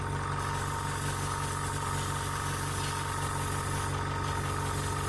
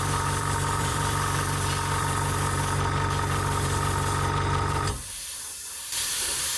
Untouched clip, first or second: first